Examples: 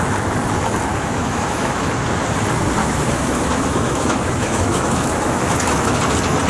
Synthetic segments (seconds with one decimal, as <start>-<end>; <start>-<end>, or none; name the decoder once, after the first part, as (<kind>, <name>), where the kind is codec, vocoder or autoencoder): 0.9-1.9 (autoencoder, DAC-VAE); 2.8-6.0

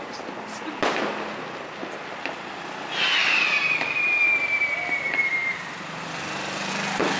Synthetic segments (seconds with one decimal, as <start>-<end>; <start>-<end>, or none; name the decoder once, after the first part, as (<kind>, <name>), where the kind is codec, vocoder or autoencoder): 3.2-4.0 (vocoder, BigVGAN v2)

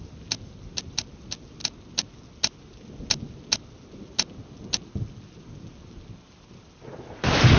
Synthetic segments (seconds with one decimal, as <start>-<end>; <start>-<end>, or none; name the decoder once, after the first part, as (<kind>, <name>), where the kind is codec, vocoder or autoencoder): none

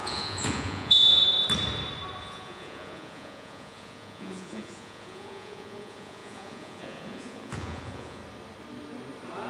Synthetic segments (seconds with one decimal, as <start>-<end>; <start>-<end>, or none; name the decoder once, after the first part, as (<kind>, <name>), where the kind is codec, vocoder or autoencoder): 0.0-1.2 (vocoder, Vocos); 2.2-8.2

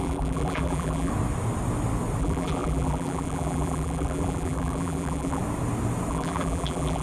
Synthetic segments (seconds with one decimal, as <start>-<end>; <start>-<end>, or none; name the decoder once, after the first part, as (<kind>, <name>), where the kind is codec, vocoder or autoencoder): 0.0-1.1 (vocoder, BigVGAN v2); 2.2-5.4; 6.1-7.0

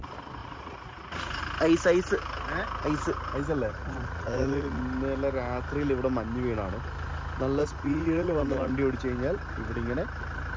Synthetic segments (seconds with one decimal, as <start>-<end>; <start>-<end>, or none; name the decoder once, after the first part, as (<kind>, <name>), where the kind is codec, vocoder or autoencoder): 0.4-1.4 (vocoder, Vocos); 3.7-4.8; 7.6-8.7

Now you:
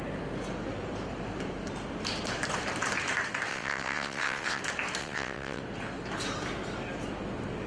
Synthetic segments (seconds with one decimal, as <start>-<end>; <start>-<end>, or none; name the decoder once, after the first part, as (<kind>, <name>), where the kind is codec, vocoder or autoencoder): 3.5-4.6 (vocoder, WaveNeXt); 5.0-5.6

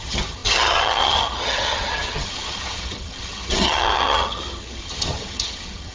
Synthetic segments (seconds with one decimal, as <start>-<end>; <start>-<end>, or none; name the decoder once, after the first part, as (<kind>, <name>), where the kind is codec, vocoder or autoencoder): 0.0-5.9 (vocoder, HiFi-GAN)